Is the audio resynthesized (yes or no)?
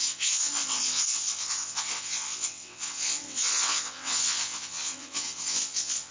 yes